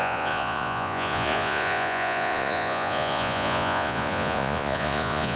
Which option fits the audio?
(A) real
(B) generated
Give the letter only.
B